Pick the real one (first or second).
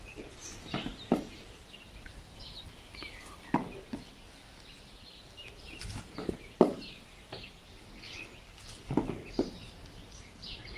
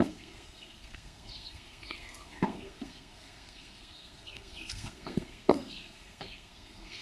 first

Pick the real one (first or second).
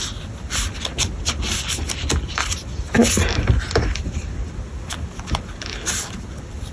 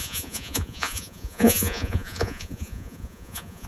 first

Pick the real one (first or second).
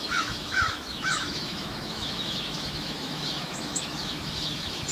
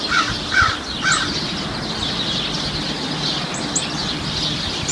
second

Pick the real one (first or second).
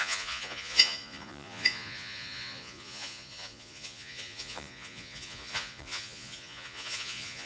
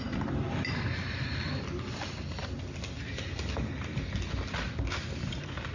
second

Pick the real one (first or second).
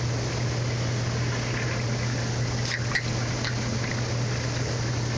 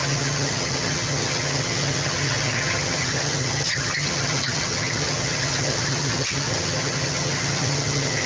first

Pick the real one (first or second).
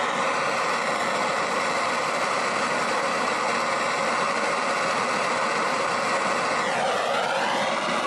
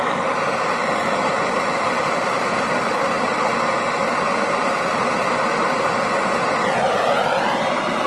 first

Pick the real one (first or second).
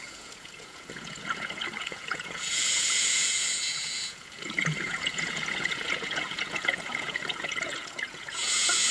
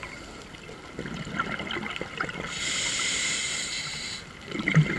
second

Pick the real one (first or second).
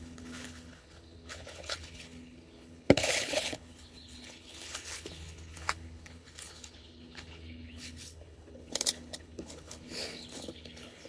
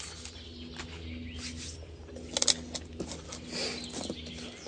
second